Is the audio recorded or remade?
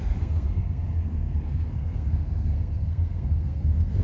remade